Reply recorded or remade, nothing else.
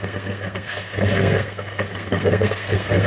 remade